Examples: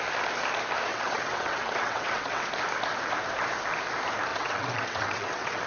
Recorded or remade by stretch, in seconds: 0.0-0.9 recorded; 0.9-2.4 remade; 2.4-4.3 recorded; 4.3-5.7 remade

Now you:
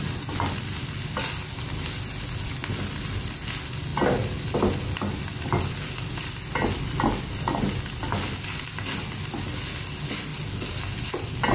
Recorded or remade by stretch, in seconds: 0.0-11.5 recorded

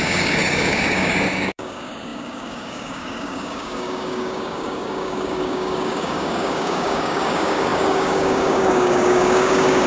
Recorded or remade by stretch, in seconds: 0.0-9.9 remade

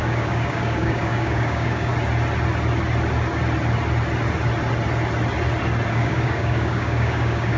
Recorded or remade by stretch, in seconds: 0.0-1.9 remade; 1.9-5.9 recorded; 5.9-7.6 remade

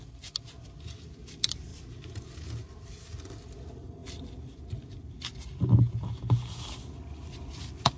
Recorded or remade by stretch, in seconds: 0.0-1.7 recorded; 1.7-2.7 remade; 2.7-8.0 recorded

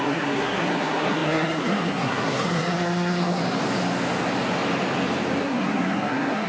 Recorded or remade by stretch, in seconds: 0.0-3.4 remade; 3.4-5.4 recorded; 5.4-6.5 remade